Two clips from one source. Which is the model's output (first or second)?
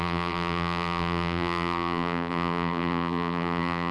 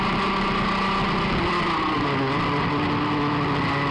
first